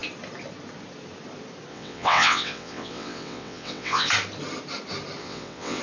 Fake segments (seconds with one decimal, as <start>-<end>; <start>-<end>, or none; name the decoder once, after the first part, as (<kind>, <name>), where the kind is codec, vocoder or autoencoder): 1.7-4.1 (vocoder, WaveNeXt); 5.2-5.8